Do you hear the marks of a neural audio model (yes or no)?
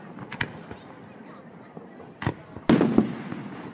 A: no